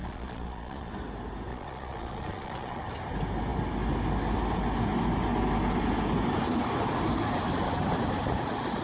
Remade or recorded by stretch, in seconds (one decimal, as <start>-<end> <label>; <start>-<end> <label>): 0.0-0.9 remade; 0.9-1.5 recorded; 1.5-2.8 remade; 2.8-8.8 recorded